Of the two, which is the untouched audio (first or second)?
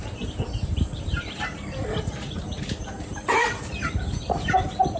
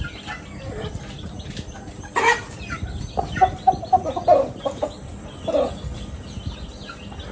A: second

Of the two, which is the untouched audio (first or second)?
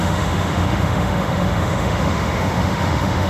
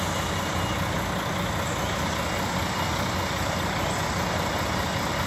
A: second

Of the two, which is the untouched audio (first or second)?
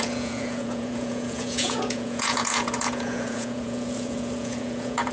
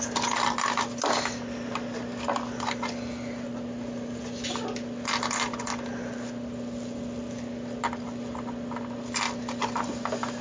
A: second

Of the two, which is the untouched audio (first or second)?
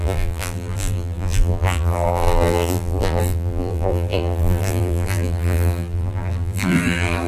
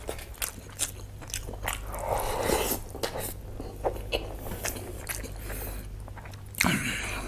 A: second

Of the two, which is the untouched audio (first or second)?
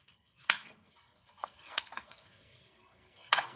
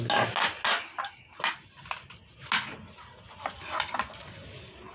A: second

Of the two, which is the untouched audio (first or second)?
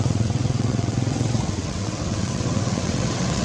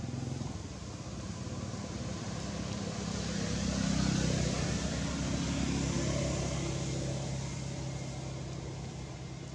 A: second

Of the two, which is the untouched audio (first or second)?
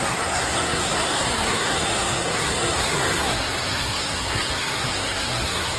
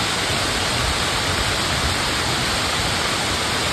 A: second